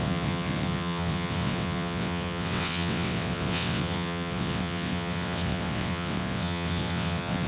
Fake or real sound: fake